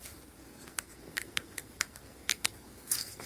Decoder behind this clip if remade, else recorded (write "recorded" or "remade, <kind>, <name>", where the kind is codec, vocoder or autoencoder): remade, codec, SNAC